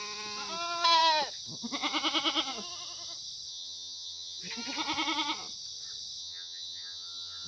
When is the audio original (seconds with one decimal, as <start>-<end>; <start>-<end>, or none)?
0.0-3.5; 4.4-6.2